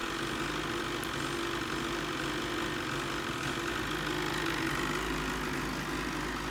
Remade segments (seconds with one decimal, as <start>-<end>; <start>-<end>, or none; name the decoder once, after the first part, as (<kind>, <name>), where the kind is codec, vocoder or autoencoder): none